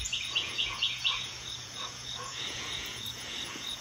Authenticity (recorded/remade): remade